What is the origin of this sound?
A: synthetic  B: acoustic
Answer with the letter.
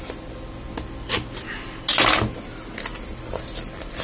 B